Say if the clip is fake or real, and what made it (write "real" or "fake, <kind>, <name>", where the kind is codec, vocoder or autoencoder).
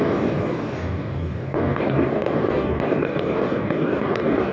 fake, codec, DAC